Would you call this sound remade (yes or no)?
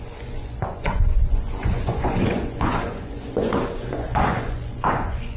yes